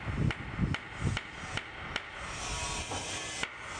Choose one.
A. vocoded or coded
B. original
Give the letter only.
B